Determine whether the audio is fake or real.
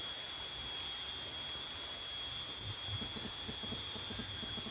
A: real